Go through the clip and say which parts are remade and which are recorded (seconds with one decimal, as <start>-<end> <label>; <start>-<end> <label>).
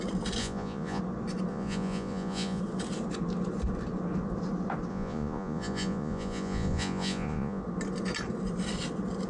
0.0-0.4 recorded; 0.4-1.0 remade; 1.0-1.5 recorded; 1.5-2.6 remade; 2.6-4.9 recorded; 4.9-7.6 remade; 7.6-9.3 recorded